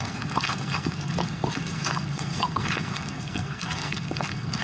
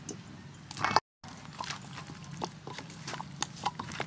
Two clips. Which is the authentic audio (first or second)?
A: second